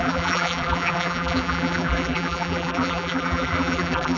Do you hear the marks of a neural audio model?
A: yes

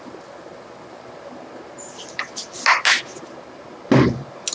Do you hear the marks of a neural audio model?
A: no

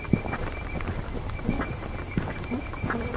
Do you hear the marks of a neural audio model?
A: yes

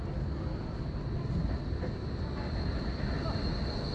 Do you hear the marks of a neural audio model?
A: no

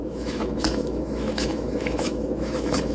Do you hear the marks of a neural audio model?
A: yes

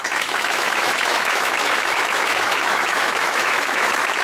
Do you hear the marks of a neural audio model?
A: yes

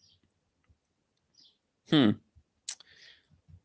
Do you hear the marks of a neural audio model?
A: no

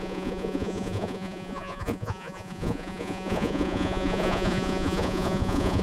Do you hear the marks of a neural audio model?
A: yes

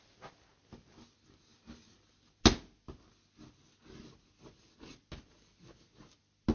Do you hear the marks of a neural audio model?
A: no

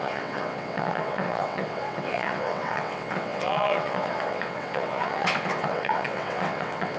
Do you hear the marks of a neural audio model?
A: yes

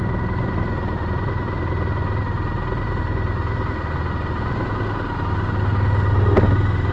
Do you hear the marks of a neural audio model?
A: no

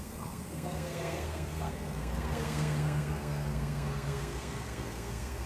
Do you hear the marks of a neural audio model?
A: yes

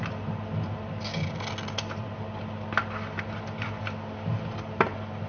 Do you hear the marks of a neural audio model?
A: no